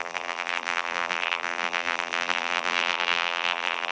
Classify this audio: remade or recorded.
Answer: remade